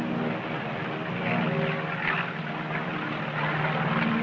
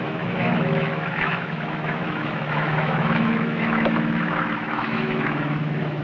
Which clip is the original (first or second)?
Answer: first